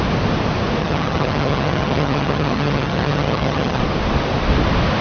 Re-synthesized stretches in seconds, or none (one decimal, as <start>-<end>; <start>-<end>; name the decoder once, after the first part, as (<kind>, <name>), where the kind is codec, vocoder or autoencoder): 0.8-3.8 (vocoder, HiFi-GAN)